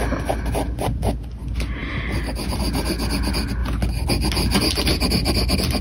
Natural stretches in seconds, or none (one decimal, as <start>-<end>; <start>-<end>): 0.0-5.8